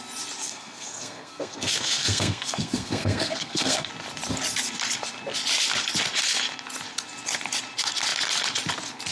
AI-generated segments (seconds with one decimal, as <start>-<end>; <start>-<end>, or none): 0.4-3.9